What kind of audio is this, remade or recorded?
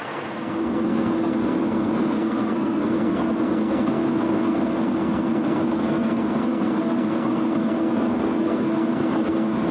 remade